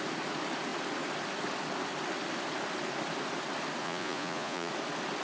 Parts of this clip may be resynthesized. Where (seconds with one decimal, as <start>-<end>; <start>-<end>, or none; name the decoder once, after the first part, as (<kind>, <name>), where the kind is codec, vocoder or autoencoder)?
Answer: 3.8-4.7 (vocoder, Vocos)